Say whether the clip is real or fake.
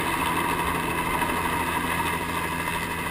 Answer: real